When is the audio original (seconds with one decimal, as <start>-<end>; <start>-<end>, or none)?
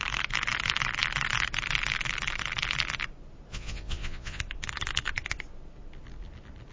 0.0-3.5; 4.4-6.7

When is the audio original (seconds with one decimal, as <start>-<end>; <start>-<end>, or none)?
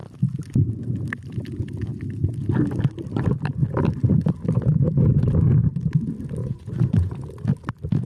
0.0-6.4; 7.2-8.1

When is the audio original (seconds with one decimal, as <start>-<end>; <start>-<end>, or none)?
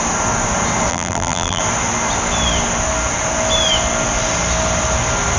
0.0-0.9; 1.6-5.4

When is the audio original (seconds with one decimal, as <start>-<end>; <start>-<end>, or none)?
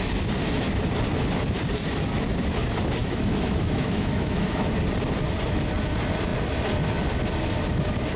0.0-3.0; 4.7-8.2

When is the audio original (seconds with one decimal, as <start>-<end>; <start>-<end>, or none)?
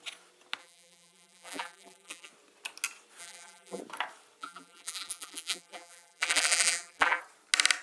0.0-0.6; 2.3-3.2; 3.8-4.4; 7.2-7.8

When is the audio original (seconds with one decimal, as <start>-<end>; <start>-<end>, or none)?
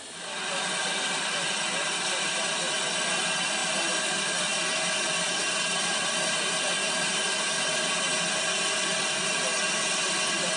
0.0-10.6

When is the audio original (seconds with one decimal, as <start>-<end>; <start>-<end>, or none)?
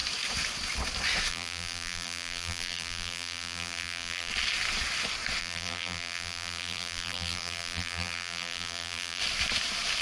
0.0-1.3; 4.3-5.4; 9.2-10.0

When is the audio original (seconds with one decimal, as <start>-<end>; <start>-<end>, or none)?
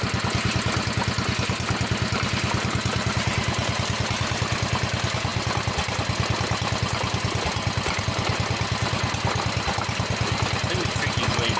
0.0-11.6